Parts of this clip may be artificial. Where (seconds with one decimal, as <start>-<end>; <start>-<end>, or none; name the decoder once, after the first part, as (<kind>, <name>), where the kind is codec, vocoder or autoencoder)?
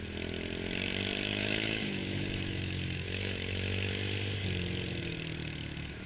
1.3-3.9 (autoencoder, DAC-VAE); 5.4-6.1